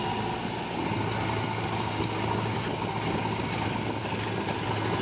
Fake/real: real